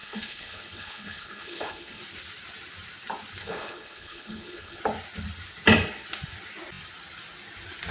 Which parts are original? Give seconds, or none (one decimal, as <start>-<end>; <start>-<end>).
2.0-3.4; 4.8-7.9